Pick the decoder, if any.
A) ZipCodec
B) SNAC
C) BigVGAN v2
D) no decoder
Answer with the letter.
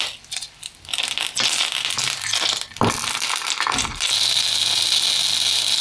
D